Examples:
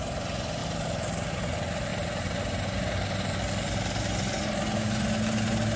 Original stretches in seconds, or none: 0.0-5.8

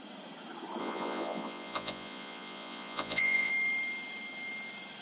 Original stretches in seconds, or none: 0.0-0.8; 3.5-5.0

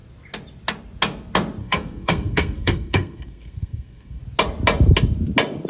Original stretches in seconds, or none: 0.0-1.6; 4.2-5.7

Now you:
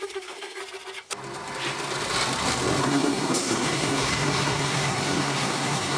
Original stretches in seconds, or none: 0.6-2.8

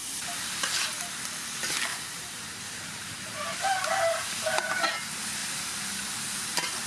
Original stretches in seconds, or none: 1.0-1.9; 3.7-6.9